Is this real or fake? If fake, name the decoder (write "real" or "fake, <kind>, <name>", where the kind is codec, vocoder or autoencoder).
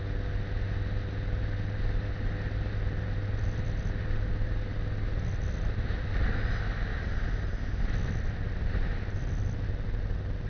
real